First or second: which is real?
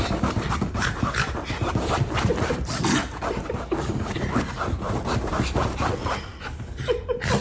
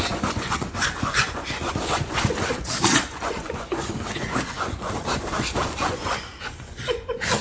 first